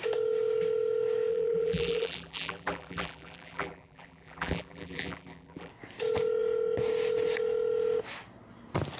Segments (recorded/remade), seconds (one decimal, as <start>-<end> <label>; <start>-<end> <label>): 0.0-1.3 recorded; 1.3-5.7 remade; 5.7-9.0 recorded